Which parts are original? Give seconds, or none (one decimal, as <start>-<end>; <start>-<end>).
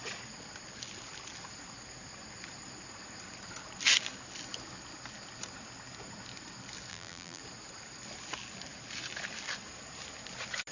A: 0.0-6.9; 7.4-10.7